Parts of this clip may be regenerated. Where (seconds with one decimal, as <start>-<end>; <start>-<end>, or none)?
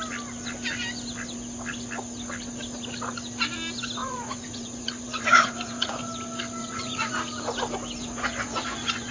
4.0-6.0; 6.6-7.2; 8.0-9.1